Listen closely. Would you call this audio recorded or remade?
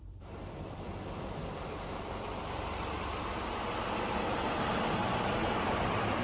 remade